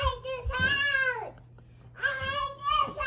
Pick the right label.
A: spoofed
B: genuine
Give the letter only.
B